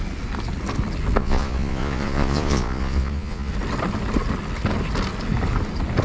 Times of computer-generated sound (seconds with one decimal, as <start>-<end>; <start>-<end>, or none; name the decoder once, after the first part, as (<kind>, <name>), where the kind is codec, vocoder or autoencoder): 1.2-3.5 (vocoder, Vocos)